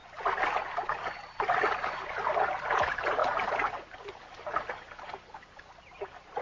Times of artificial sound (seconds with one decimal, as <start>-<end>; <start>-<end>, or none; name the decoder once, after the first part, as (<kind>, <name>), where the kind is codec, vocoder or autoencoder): none